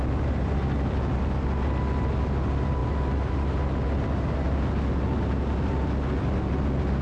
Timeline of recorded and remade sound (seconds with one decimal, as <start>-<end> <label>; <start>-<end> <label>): 0.0-7.0 recorded